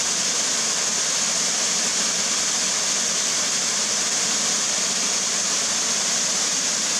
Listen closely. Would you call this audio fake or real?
real